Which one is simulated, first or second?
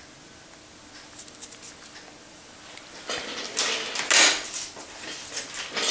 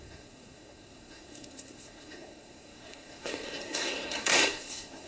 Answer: second